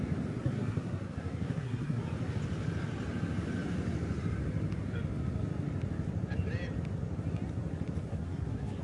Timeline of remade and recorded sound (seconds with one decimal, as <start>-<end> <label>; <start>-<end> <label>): 0.0-0.4 recorded; 0.4-2.0 remade; 2.0-8.1 recorded; 8.1-8.8 remade